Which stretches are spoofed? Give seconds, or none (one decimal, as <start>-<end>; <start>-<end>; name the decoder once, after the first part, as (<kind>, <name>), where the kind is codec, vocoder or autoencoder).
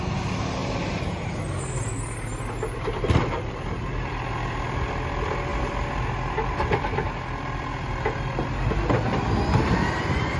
2.3-4.3 (vocoder, BigVGAN v2)